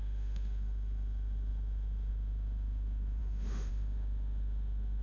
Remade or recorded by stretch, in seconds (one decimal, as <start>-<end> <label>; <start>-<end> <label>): 0.0-5.0 remade